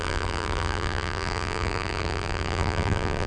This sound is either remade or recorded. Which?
remade